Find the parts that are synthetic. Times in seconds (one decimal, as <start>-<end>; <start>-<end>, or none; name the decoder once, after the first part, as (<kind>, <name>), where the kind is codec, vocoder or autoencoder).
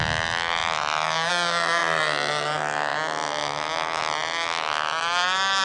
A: none